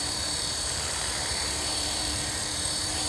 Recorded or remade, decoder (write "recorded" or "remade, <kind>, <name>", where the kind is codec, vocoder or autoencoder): remade, vocoder, BigVGAN v2